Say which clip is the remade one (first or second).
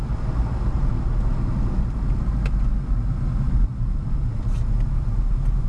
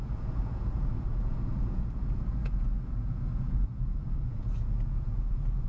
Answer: second